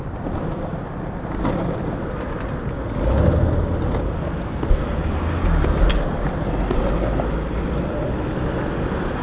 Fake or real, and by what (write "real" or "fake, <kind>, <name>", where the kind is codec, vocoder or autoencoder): real